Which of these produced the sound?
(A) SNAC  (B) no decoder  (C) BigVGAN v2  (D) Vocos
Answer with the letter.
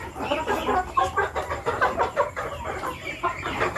C